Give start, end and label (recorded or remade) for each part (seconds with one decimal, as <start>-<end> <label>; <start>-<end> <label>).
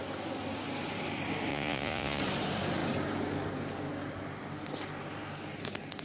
0.0-1.5 recorded; 1.5-2.2 remade; 2.2-6.0 recorded